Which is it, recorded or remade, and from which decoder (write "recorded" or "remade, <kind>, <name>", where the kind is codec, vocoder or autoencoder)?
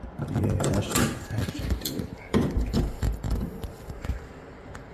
remade, vocoder, BigVGAN v2